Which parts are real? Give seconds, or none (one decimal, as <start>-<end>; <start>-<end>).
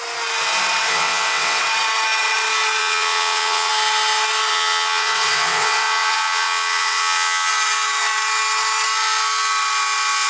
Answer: 0.0-0.9; 1.6-2.8; 3.7-4.5; 7.5-10.3